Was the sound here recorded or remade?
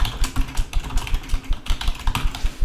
recorded